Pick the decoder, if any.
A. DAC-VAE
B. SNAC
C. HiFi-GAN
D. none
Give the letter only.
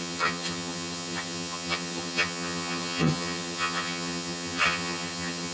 C